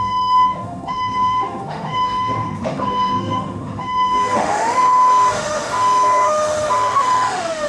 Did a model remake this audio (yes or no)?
yes